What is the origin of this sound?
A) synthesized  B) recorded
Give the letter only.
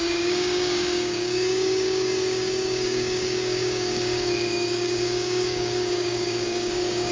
A